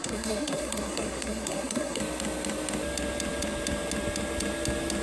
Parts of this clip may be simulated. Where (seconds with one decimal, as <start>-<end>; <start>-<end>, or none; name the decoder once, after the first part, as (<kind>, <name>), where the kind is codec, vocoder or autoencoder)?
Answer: 0.0-2.0 (codec, SNAC)